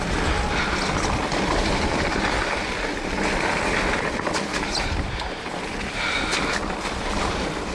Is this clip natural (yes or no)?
yes